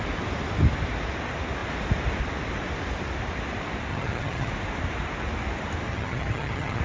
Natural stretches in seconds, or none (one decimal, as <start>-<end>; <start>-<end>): 0.0-3.9; 4.5-5.9

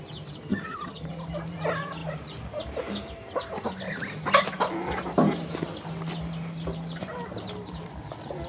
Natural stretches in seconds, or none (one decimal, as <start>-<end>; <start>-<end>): 0.0-0.5; 1.1-8.5

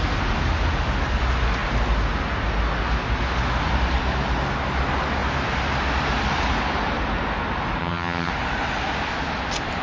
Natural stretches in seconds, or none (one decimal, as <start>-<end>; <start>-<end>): 0.0-7.8; 8.3-9.8

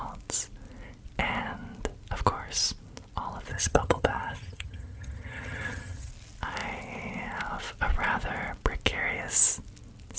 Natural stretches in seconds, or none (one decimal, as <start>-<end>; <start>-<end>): 0.0-3.5; 6.1-10.2

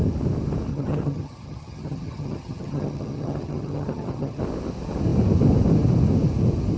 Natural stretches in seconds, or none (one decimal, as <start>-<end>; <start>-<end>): 0.0-0.7; 4.4-6.8

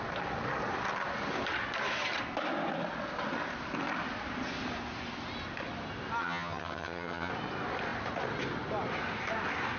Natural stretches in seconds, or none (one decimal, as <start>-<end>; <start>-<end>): 0.0-6.2; 7.3-9.8